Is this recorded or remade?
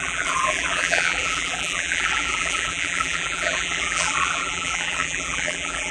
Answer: remade